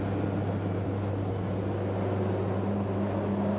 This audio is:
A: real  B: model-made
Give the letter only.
A